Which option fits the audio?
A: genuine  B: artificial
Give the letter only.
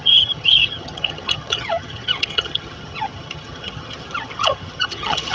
B